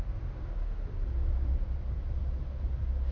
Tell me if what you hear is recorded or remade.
recorded